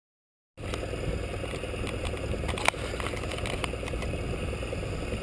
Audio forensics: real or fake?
real